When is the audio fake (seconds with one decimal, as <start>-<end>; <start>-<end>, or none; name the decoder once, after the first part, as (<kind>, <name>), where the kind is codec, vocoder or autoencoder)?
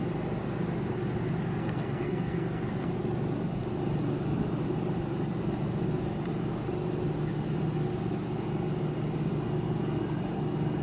1.6-2.9 (codec, SNAC)